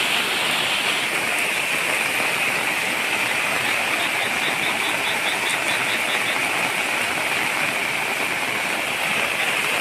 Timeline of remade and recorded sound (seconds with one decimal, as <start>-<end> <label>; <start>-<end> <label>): 0.0-9.8 recorded